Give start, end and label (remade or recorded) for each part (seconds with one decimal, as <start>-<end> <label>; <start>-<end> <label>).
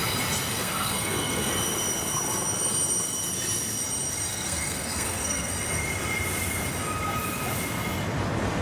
0.0-0.5 recorded; 0.5-1.5 remade; 1.5-4.3 recorded; 4.3-5.5 remade; 5.5-8.6 recorded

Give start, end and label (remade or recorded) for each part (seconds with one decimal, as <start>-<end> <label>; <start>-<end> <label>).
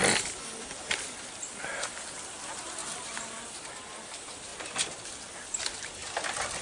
0.0-6.6 recorded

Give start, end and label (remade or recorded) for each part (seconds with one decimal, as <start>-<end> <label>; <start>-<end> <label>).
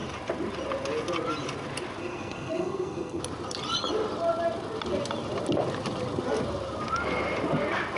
0.0-2.0 recorded; 2.0-3.2 remade; 3.2-8.0 recorded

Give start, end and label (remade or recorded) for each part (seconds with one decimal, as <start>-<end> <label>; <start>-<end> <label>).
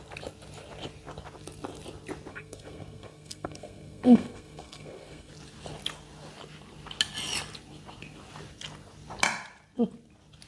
0.0-2.3 recorded; 2.3-5.3 remade; 5.3-10.5 recorded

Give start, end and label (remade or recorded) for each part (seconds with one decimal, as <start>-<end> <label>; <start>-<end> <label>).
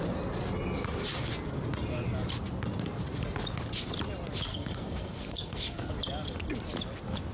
0.0-4.5 recorded; 4.5-5.9 remade; 5.9-7.3 recorded